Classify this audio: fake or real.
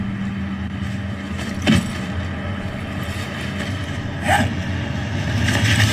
real